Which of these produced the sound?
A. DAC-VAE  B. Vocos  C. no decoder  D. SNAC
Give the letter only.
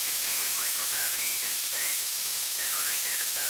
A